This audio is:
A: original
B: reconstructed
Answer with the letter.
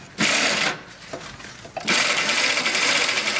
A